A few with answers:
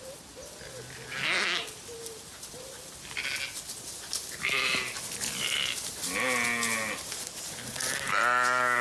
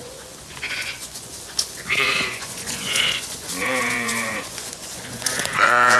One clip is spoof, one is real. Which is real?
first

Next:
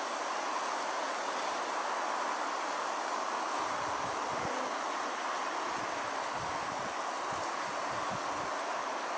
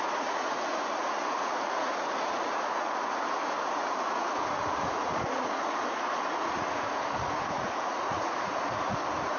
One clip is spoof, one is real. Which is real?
first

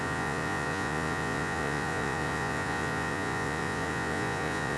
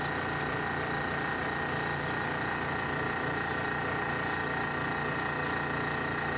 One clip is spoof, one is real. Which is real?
second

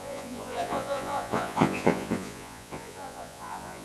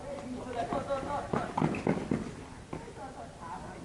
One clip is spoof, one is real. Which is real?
second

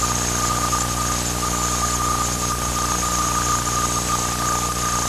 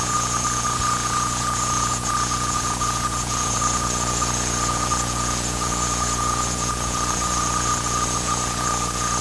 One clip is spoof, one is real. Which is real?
first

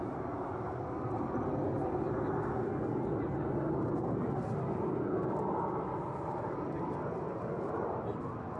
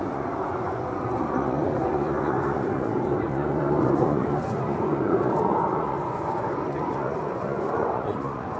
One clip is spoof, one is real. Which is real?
first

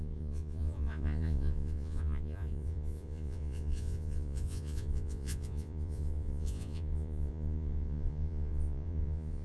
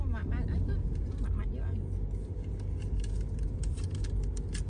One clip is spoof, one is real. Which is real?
second